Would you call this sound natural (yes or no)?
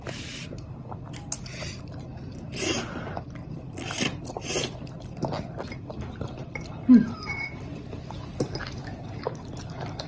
yes